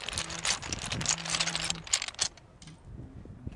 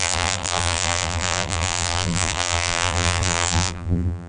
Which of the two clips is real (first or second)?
first